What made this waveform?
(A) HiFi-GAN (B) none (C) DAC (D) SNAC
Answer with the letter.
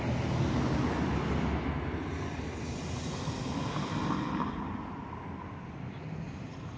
B